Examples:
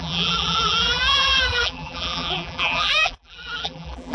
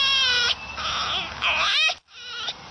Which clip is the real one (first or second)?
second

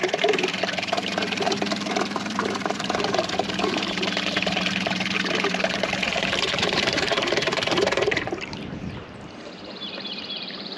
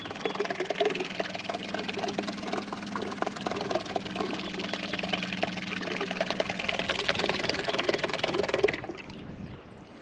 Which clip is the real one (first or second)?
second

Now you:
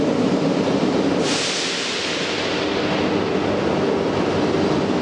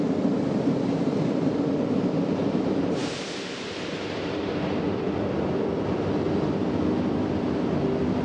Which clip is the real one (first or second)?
first